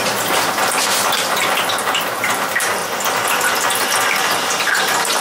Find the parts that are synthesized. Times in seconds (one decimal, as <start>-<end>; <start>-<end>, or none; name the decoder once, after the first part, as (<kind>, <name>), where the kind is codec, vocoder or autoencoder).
0.0-2.8 (vocoder, BigVGAN v2); 4.3-5.2